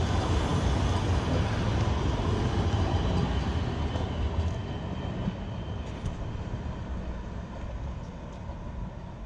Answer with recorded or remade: recorded